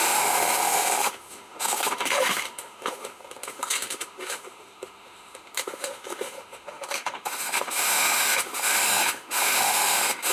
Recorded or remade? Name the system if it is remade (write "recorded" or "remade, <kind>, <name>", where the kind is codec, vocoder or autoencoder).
remade, autoencoder, DAC-VAE